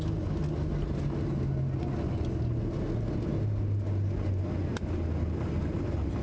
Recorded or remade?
recorded